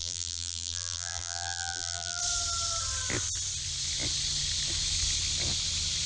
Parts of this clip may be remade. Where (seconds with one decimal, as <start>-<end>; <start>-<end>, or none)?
0.0-2.2